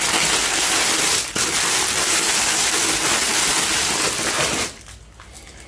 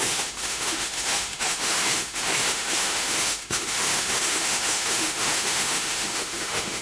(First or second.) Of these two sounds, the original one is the first